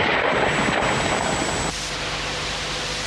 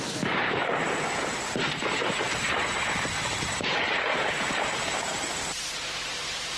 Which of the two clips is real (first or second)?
first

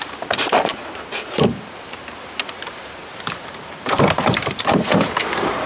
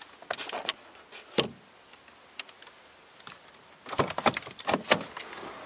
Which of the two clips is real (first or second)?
second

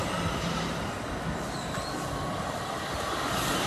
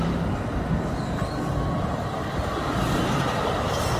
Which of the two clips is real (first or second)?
second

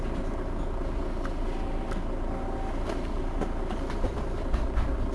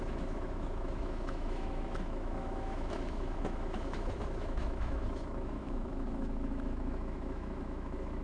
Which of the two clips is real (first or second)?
first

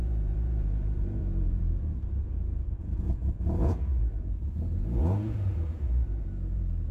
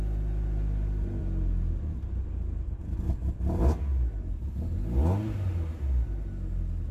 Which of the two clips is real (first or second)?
second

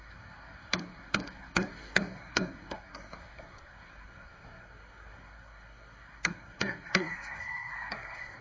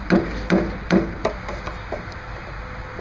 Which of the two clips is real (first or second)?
second